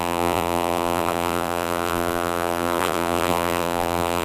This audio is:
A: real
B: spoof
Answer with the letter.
B